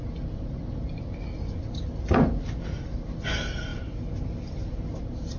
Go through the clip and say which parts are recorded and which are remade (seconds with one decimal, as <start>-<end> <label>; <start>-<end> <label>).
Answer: 0.0-5.4 recorded